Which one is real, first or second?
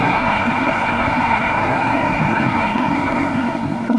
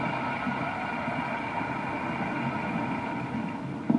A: second